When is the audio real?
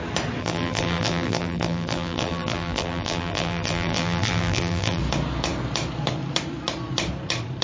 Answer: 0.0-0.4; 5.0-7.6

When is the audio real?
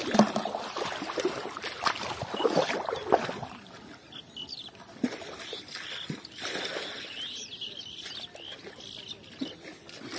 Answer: 0.0-10.2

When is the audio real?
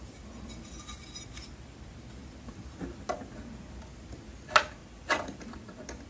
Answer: 0.0-4.8; 5.5-6.1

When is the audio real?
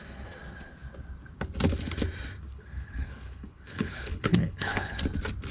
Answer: 0.0-2.5; 5.0-5.5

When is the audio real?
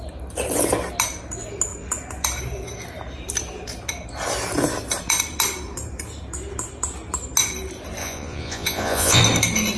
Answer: 0.0-8.0; 9.2-9.8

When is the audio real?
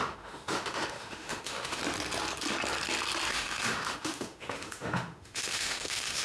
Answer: 1.8-3.3